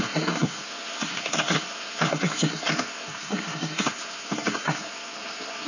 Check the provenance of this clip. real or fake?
fake